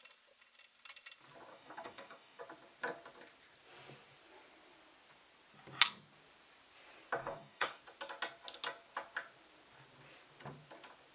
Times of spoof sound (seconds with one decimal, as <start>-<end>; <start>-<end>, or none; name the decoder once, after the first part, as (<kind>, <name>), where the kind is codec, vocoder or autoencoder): 1.5-2.4 (codec, DAC); 7.2-7.8